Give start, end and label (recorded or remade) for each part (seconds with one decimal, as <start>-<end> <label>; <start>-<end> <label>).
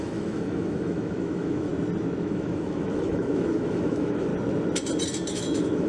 0.0-1.7 remade; 1.7-2.2 recorded; 2.2-4.3 remade; 4.3-5.3 recorded; 5.3-5.9 remade